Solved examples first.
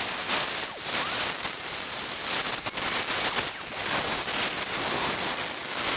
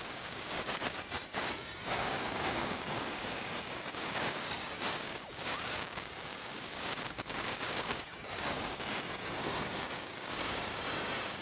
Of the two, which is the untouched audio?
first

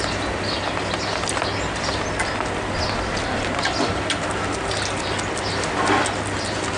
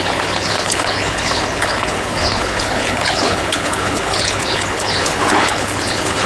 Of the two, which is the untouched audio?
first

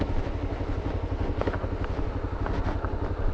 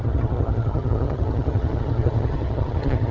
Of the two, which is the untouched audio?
first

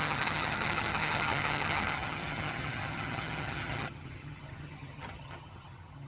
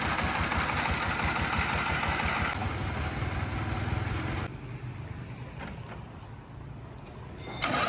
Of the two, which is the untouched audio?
second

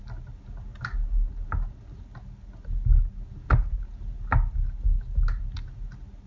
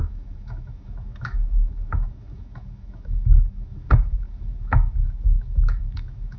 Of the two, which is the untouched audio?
first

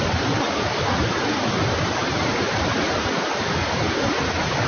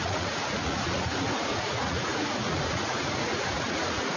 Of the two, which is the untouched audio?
first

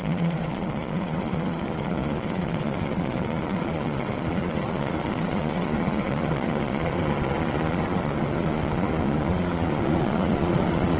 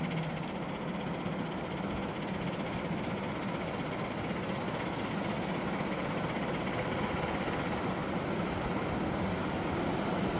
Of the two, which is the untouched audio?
second